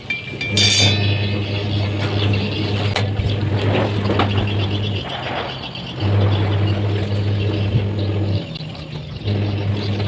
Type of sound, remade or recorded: recorded